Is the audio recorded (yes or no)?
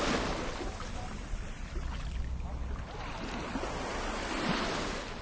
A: yes